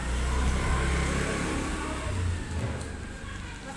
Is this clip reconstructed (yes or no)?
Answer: no